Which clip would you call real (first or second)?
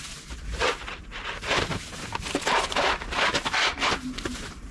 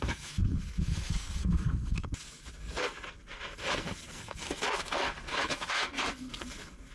first